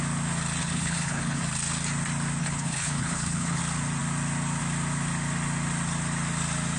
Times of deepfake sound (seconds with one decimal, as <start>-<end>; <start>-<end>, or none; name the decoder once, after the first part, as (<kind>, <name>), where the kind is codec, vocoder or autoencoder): 0.6-1.4 (codec, HILCodec); 2.4-3.6

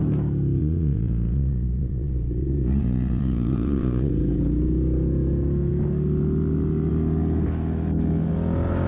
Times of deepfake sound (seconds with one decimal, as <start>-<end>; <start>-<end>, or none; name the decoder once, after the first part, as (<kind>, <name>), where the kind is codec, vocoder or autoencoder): 0.6-4.1 (vocoder, Vocos)

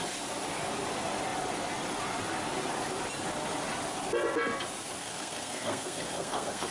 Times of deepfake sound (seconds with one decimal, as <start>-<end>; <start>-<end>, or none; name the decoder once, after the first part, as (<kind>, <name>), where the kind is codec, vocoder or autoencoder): 5.0-6.7 (codec, SNAC)

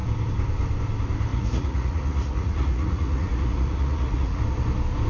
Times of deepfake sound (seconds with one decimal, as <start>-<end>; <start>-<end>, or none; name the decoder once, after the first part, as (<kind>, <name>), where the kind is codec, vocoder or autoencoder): 1.3-4.4 (vocoder, Vocos)

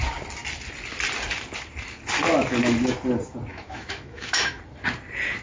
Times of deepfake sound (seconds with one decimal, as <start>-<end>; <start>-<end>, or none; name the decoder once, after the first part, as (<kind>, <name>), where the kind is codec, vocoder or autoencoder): 3.5-4.6 (autoencoder, DAC-VAE)

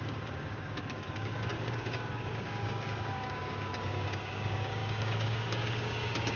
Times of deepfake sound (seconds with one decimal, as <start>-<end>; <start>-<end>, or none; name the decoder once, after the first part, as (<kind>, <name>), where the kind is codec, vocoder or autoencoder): 0.0-6.4 (codec, DAC)

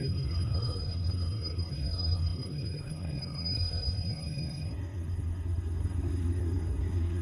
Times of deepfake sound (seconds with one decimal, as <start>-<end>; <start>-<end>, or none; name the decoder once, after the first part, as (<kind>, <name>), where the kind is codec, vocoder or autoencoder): 0.0-7.2 (codec, SNAC)

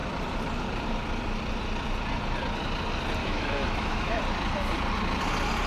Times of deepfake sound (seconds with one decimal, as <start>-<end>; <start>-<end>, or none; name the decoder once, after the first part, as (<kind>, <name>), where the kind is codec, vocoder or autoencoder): 3.2-4.2 (autoencoder, DAC-VAE)